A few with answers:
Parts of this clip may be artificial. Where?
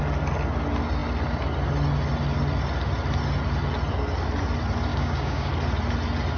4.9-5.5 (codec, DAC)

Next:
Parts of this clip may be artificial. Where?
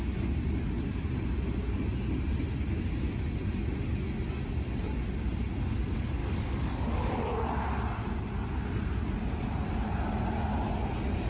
6.2-7.2 (codec, DAC)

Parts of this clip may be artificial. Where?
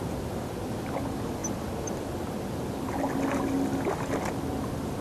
none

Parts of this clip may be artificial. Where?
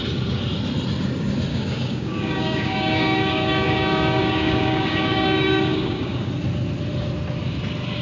1.5-6.3 (codec, DAC)